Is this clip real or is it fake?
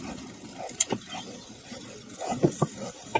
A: real